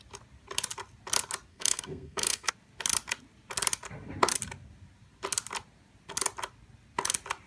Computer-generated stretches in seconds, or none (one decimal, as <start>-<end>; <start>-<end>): 1.5-2.5

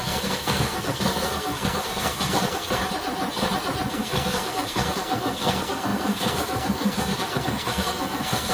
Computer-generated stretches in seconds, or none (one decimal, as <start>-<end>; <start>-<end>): 0.0-2.8; 3.9-8.5